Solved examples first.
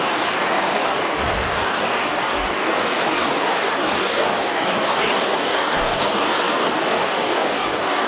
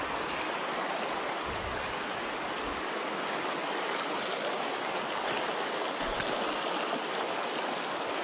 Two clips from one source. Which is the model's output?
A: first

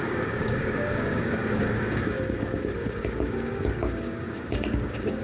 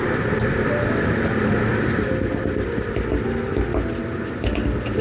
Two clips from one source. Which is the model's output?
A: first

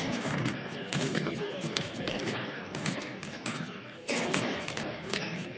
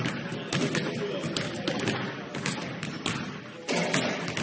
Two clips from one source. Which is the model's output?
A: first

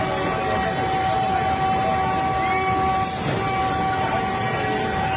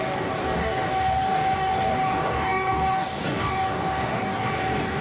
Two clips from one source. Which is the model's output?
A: second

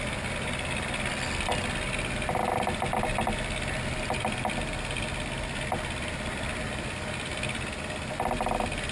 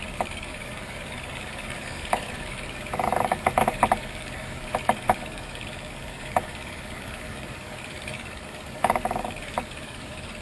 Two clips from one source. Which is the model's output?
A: second